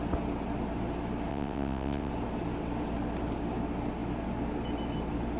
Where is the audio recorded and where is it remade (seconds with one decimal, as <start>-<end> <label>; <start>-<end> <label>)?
0.0-1.3 recorded; 1.3-2.1 remade; 2.1-5.4 recorded